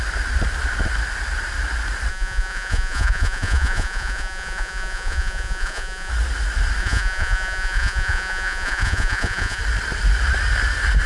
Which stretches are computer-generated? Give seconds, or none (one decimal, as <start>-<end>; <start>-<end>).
2.1-6.1; 6.8-9.6